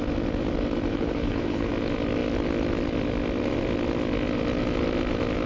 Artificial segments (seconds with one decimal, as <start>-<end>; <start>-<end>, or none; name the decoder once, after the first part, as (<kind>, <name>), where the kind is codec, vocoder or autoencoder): 0.9-1.7 (codec, HILCodec)